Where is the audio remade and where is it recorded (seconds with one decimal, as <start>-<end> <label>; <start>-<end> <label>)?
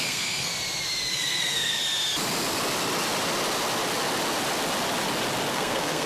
0.0-0.5 remade; 0.5-1.1 recorded; 1.1-1.8 remade; 1.8-5.5 recorded; 5.5-6.1 remade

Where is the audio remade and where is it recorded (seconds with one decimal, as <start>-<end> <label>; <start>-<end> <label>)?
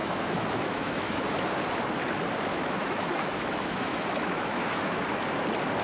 0.0-1.2 remade; 1.2-2.5 recorded; 2.5-5.0 remade; 5.0-5.8 recorded